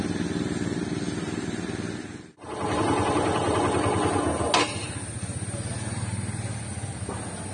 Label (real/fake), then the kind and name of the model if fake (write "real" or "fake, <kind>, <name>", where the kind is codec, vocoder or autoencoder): real